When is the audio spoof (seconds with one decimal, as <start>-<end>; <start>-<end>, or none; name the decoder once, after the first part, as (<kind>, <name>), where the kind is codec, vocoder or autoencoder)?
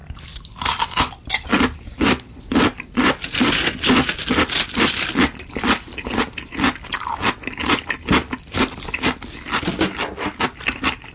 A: none